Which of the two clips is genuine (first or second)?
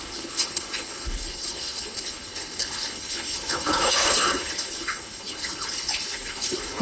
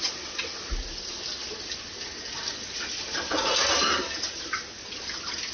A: second